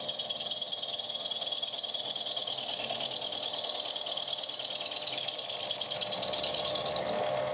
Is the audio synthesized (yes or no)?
no